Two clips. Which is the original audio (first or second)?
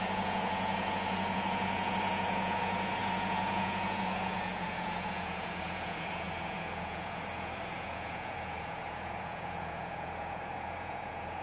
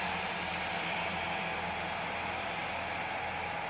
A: second